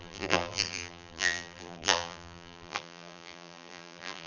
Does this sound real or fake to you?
fake